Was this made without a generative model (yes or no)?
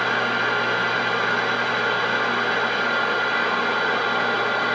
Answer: yes